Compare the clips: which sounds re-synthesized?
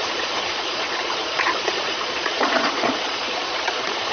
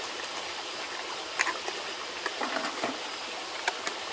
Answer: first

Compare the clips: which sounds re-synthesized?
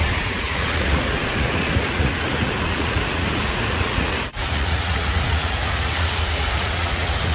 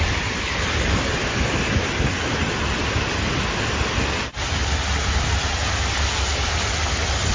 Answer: first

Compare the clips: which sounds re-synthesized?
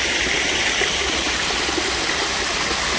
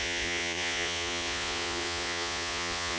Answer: second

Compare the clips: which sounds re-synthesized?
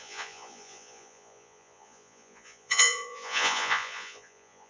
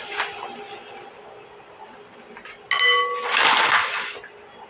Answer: first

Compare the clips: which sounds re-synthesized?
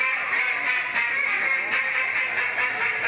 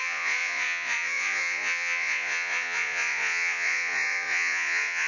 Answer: second